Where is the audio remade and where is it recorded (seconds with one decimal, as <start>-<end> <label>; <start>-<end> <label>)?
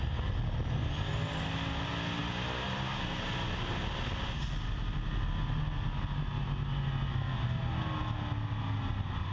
0.0-9.3 recorded